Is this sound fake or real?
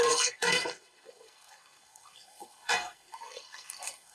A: fake